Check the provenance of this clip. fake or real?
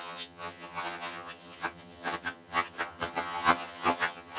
fake